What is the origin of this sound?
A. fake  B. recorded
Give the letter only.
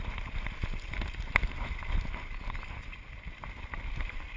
B